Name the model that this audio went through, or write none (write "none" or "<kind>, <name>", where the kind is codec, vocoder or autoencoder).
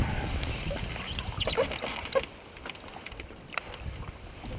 none